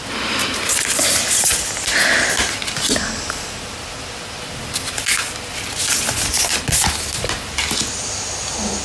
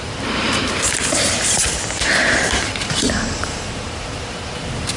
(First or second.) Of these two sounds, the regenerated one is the second